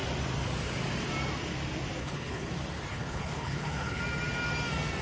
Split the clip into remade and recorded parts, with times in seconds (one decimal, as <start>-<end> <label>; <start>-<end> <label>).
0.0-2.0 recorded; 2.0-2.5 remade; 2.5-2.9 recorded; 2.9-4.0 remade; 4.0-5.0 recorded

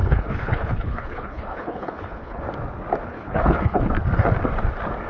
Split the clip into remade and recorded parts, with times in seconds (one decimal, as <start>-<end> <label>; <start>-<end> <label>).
0.0-2.4 remade; 2.4-3.1 recorded; 3.1-3.9 remade; 3.9-5.1 recorded

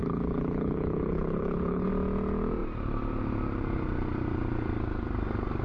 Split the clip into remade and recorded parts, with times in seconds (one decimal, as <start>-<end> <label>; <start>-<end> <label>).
0.0-1.9 remade; 1.9-5.6 recorded

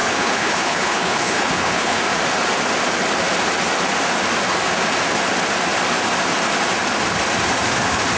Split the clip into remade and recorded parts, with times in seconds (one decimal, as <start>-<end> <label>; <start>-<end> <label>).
0.0-2.0 remade; 2.0-8.2 recorded

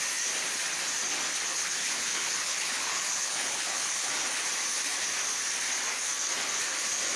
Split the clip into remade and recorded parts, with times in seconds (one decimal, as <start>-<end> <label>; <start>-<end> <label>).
0.0-1.5 recorded; 1.5-4.1 remade; 4.1-7.2 recorded

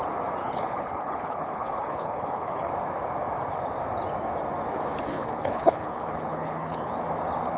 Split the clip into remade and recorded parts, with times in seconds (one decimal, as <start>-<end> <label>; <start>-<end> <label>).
0.0-0.4 recorded; 0.4-2.7 remade; 2.7-5.1 recorded; 5.1-6.9 remade; 6.9-7.6 recorded